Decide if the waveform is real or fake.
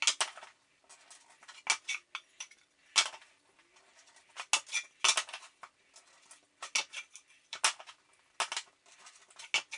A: real